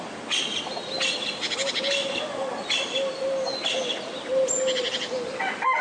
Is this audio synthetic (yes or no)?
no